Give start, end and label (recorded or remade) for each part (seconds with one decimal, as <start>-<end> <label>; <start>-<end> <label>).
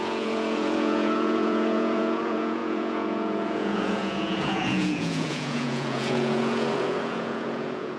0.0-8.0 remade